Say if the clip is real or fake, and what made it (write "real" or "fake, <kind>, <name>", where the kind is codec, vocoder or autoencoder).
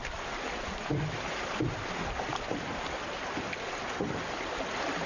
real